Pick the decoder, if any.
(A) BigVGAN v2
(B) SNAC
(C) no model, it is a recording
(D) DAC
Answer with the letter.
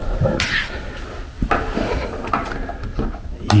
C